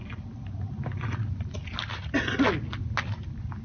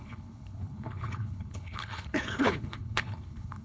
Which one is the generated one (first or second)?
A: second